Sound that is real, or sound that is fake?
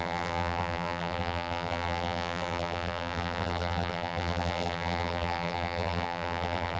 fake